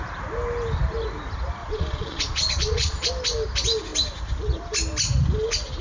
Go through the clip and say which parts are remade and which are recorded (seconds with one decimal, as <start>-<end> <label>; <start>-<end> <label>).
0.0-1.6 recorded; 1.6-3.1 remade; 3.1-5.8 recorded